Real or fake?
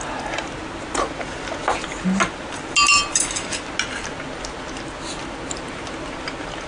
real